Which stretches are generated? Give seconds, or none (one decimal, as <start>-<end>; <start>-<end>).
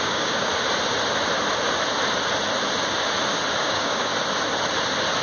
0.0-0.5; 3.6-4.1